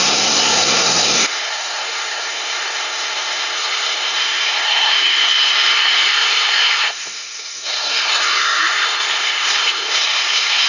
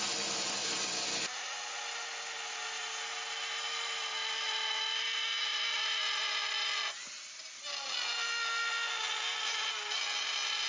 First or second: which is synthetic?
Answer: first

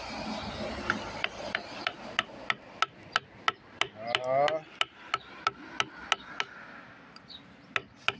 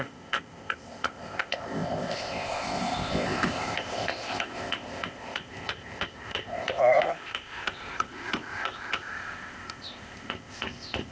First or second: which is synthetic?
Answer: second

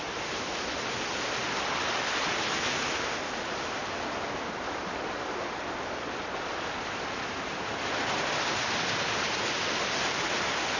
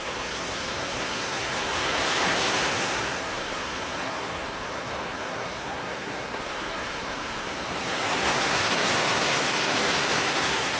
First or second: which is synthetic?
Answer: second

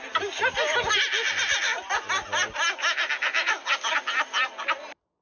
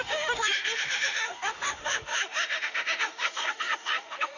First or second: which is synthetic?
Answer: second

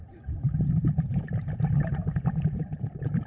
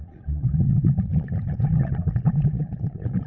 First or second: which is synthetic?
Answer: second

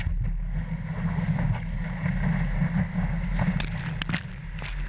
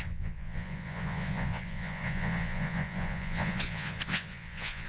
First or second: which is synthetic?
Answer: second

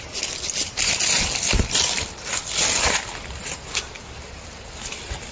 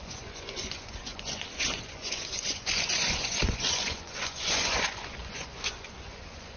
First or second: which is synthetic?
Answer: second